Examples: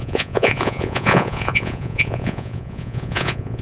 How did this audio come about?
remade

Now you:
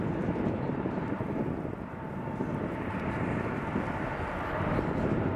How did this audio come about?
recorded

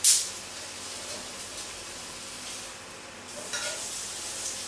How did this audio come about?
recorded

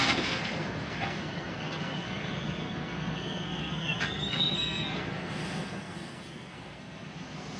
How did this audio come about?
remade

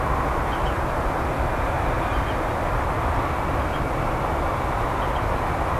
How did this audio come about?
recorded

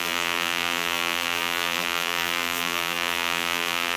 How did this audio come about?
remade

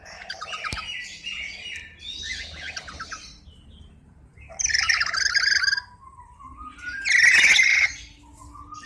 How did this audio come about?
recorded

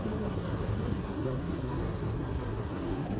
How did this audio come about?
remade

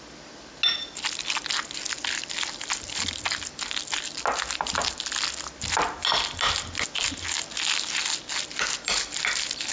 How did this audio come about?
recorded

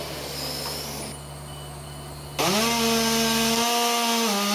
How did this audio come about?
recorded